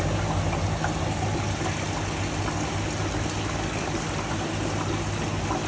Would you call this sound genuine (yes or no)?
yes